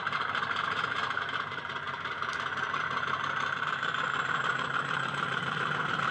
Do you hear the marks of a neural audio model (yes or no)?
yes